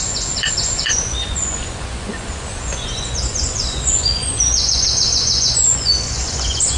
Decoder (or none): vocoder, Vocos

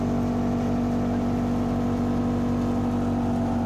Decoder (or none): none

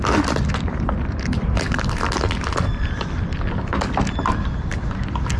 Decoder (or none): none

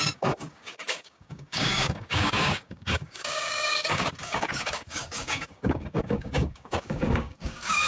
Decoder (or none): codec, DAC